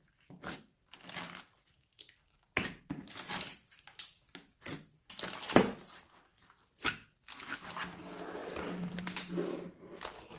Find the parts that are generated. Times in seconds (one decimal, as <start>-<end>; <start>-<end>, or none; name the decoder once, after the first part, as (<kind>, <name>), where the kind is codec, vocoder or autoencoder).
none